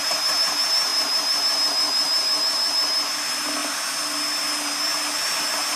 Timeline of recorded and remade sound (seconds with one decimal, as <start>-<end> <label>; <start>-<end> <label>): 0.0-5.8 recorded